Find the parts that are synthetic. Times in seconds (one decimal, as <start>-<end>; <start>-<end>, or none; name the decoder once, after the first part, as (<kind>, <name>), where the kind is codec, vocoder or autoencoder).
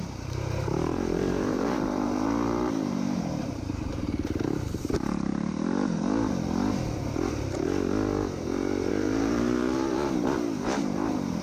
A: 0.0-5.3 (vocoder, BigVGAN v2); 8.9-11.4